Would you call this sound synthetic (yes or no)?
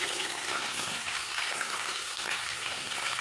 yes